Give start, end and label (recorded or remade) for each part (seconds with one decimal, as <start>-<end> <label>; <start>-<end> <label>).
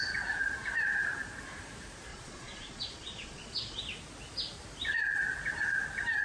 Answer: 0.0-2.1 recorded; 2.1-3.8 remade; 3.8-6.2 recorded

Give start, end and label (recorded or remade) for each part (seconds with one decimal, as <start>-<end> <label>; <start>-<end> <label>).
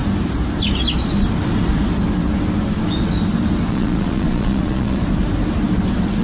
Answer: 0.0-3.7 recorded; 3.7-5.0 remade; 5.0-6.2 recorded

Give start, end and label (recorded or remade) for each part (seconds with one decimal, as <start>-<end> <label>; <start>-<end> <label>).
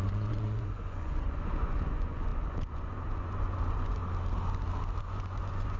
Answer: 0.0-4.0 remade; 4.0-5.0 recorded; 5.0-5.8 remade